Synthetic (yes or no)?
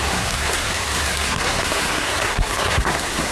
yes